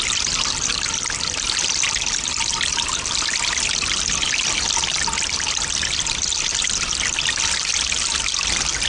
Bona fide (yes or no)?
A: yes